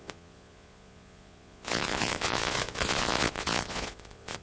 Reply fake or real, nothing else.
fake